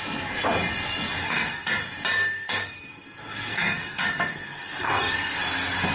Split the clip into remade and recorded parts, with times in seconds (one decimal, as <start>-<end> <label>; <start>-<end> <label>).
0.0-1.2 recorded; 1.2-1.7 remade; 1.7-2.2 recorded; 2.2-5.4 remade; 5.4-5.9 recorded